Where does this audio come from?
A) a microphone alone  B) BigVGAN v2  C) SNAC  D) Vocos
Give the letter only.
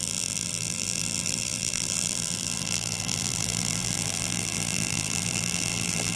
B